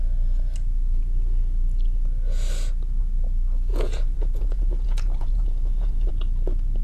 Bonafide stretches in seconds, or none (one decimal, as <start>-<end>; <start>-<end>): 0.0-3.7; 6.1-6.8